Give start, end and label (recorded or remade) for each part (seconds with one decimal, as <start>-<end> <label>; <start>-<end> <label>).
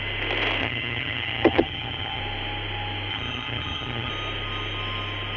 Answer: 0.0-0.6 recorded; 0.6-2.2 remade; 2.2-3.1 recorded; 3.1-4.1 remade; 4.1-5.4 recorded